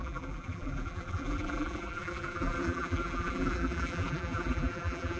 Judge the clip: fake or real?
fake